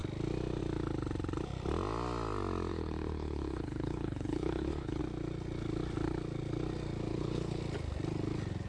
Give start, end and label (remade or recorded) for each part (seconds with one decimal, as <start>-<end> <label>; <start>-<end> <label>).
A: 0.0-2.7 recorded; 2.7-5.0 remade; 5.0-7.1 recorded; 7.1-7.6 remade; 7.6-8.7 recorded